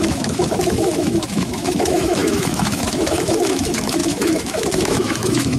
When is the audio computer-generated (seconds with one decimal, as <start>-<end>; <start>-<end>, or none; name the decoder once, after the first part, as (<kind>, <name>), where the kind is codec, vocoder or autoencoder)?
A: 0.0-5.6 (autoencoder, DAC-VAE)